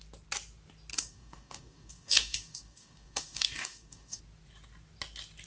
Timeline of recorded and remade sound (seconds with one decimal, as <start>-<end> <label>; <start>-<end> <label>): 0.0-0.9 recorded; 0.9-4.2 remade; 4.2-5.5 recorded